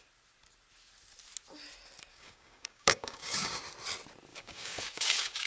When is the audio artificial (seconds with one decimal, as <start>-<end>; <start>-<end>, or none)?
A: 2.1-3.6; 4.3-5.5